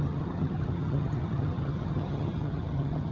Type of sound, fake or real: fake